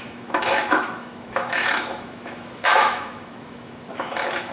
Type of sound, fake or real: fake